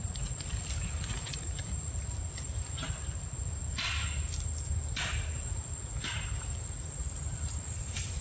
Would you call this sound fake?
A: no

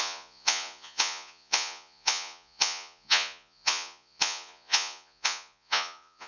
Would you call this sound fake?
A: yes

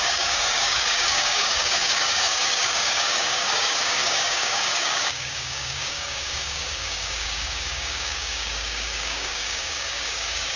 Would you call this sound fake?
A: yes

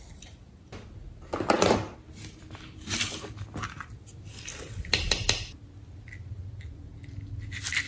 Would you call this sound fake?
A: no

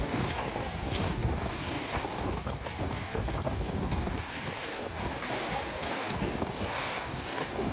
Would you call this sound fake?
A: yes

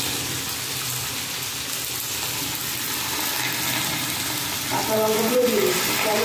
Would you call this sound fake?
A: no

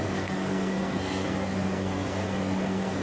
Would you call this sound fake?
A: yes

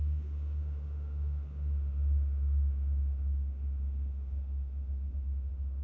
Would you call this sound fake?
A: yes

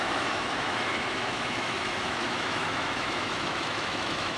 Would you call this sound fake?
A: yes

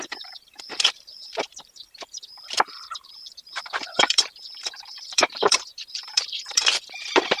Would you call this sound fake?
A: yes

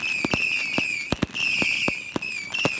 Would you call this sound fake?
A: no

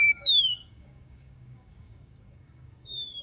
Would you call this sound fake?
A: yes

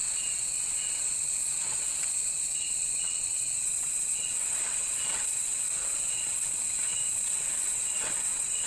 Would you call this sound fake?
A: yes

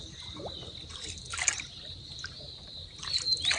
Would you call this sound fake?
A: no